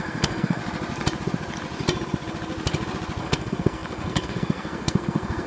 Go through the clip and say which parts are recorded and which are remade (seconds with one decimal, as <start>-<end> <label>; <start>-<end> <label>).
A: 0.0-0.6 remade; 0.6-3.2 recorded; 3.2-5.5 remade